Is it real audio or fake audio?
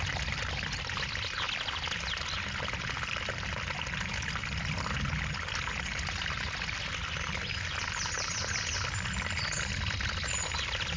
real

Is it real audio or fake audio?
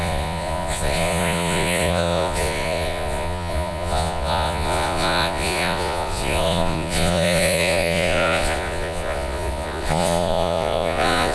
fake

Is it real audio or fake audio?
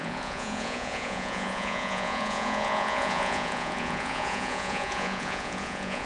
fake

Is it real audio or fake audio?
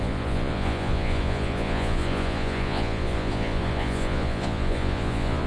fake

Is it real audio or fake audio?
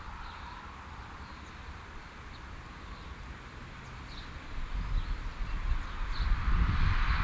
real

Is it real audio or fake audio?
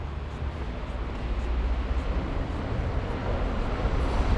real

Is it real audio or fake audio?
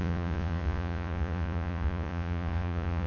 fake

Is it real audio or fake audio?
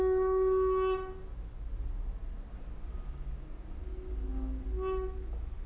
real